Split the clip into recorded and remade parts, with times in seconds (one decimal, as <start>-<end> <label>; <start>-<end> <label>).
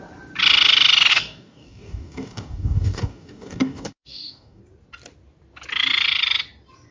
0.0-1.1 recorded; 1.1-4.6 remade; 4.6-6.9 recorded